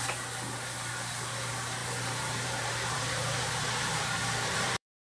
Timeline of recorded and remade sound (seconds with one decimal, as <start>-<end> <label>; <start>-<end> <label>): 0.0-1.8 recorded; 1.8-5.0 remade